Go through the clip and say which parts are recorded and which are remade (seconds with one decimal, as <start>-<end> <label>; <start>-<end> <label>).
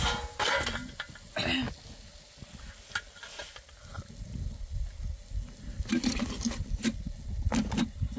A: 0.0-8.2 recorded